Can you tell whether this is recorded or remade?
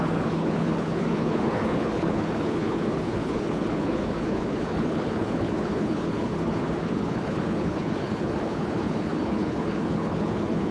remade